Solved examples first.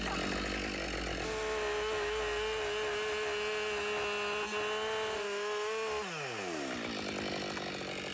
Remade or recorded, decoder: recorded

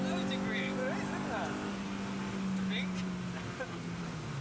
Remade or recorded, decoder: recorded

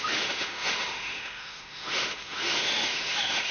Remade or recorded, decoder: remade, autoencoder, DAC-VAE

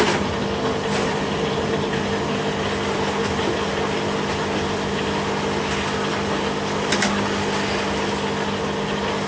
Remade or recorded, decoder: recorded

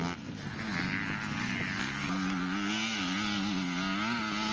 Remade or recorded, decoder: recorded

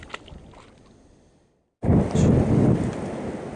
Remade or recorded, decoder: recorded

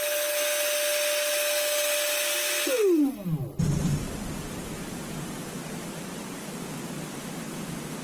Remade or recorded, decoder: recorded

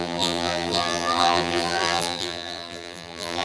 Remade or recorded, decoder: remade, vocoder, BigVGAN v2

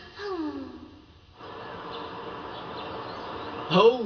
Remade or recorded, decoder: recorded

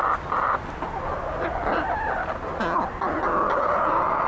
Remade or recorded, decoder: recorded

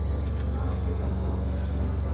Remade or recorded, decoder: remade, codec, SNAC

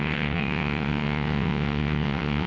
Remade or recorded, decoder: remade, vocoder, WaveNeXt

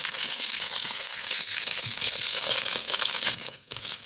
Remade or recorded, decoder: remade, codec, SNAC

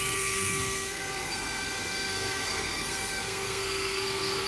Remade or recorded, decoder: remade, codec, SNAC